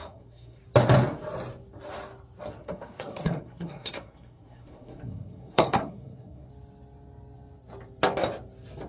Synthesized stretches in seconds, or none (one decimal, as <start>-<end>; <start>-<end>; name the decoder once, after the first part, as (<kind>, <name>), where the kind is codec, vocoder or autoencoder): 0.0-0.6 (codec, SNAC); 2.6-6.5